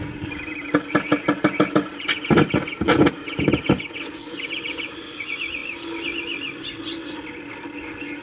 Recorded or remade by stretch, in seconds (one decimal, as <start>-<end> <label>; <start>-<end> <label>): 0.0-8.2 recorded